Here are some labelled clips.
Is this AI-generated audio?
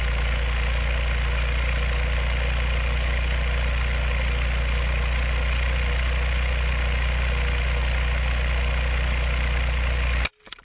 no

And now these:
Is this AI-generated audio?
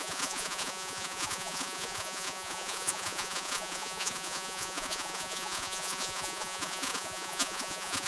yes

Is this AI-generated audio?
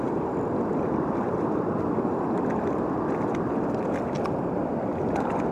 no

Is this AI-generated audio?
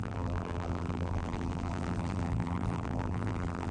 yes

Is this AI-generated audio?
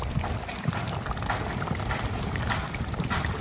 no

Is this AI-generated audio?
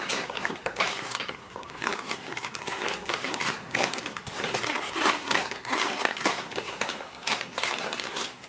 yes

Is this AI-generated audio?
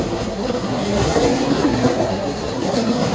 yes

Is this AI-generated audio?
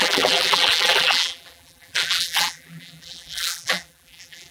yes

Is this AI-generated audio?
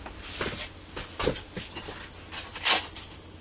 no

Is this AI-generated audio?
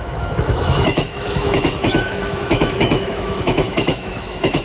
yes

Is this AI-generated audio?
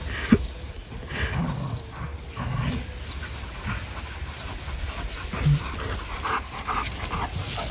no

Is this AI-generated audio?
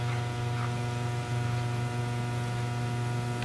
no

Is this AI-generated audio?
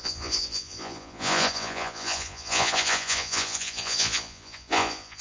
yes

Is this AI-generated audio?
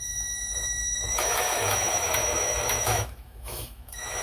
yes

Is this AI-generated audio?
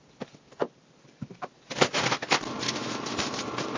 yes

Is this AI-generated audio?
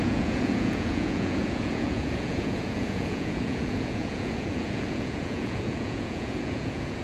yes